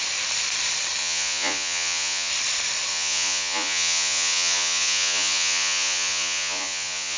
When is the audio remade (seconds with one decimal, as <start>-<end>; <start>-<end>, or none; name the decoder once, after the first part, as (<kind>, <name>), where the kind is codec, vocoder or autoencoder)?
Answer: 1.0-2.3 (vocoder, Vocos); 2.9-7.2